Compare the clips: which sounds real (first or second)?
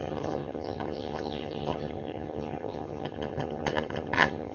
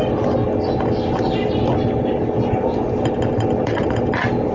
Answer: second